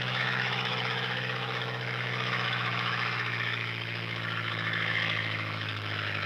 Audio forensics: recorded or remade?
remade